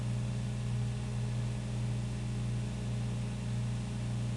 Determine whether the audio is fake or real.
real